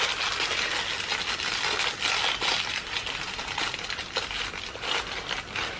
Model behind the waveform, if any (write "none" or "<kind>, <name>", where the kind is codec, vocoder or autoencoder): none